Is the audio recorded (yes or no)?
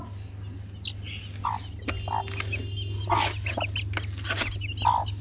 yes